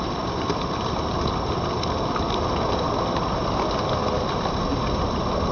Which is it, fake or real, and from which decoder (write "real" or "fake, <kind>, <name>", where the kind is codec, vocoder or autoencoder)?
real